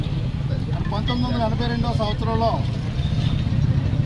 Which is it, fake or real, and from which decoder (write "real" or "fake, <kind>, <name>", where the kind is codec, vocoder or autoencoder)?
real